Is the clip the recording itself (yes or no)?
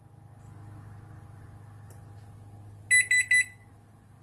yes